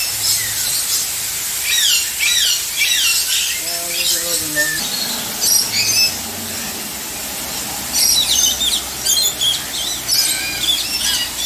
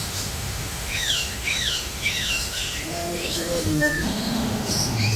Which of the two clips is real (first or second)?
first